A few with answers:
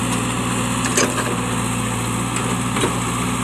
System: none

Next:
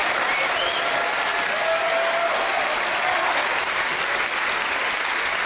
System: none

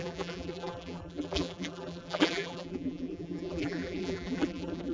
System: vocoder, BigVGAN v2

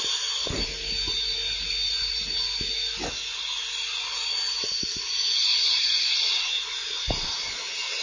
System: none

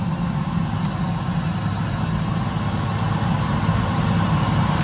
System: none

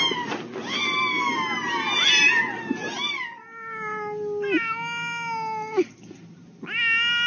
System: none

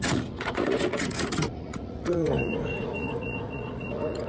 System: vocoder, Vocos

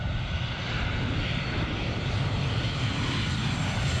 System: vocoder, BigVGAN v2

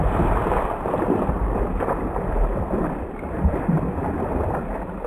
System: none